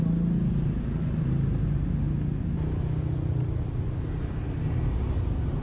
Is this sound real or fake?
real